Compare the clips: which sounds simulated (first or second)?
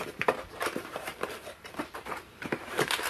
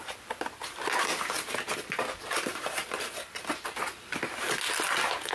first